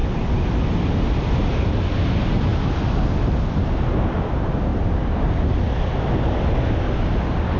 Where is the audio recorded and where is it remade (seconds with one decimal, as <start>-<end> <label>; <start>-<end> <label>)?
0.0-7.6 recorded